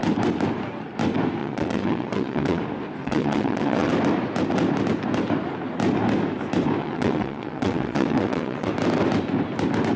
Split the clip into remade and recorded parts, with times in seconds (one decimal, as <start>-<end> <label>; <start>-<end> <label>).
0.0-1.4 recorded; 1.4-2.6 remade; 2.6-3.0 recorded; 3.0-3.9 remade; 3.9-6.8 recorded; 6.8-8.7 remade; 8.7-10.0 recorded